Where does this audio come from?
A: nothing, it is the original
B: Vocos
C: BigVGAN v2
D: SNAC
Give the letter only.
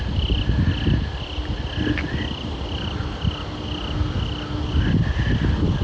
A